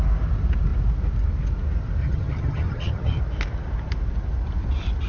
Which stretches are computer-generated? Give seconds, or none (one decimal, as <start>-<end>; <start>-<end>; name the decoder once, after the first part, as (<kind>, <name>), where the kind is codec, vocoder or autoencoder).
2.0-3.2 (vocoder, HiFi-GAN)